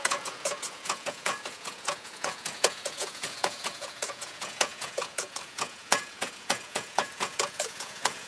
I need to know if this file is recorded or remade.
remade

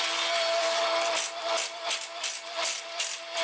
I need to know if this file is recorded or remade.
recorded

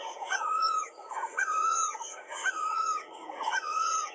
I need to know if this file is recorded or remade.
remade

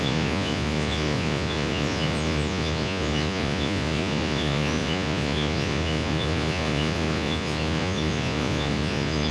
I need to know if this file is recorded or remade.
remade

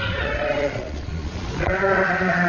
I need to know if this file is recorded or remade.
remade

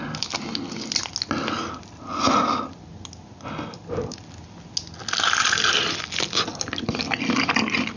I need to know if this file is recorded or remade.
recorded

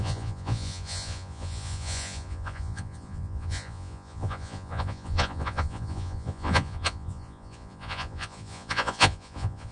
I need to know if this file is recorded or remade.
remade